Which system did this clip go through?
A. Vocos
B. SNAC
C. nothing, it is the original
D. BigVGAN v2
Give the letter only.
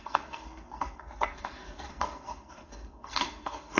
B